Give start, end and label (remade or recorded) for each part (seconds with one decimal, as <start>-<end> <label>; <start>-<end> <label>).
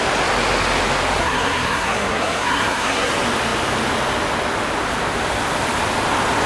0.0-1.2 recorded; 1.2-3.1 remade; 3.1-6.5 recorded